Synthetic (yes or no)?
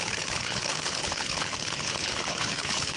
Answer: yes